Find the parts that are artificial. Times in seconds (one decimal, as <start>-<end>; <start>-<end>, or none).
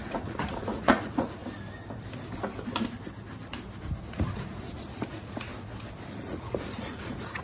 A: 0.0-1.4; 4.0-5.5; 6.1-7.4